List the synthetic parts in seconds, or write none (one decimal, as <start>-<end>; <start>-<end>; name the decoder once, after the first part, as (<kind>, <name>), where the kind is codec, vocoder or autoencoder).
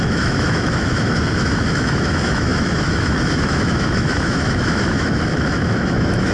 0.0-6.3 (autoencoder, DAC-VAE)